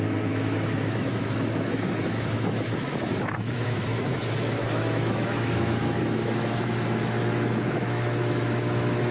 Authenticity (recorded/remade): remade